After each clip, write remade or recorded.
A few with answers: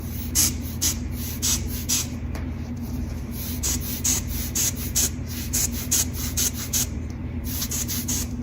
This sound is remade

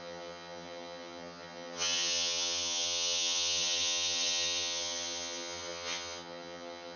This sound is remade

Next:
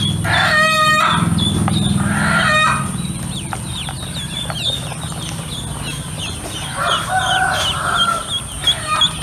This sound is recorded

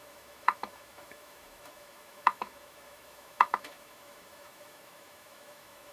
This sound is remade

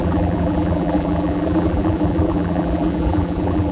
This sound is remade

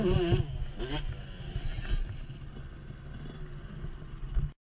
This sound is recorded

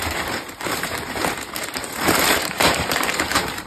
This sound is remade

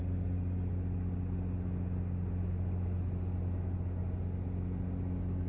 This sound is recorded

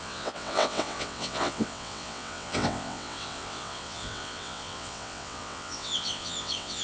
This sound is remade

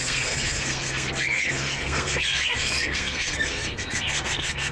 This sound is remade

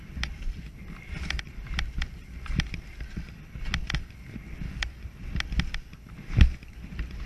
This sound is recorded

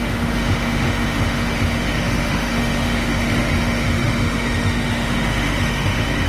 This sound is remade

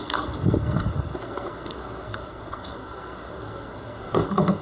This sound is remade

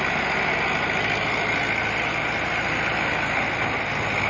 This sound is recorded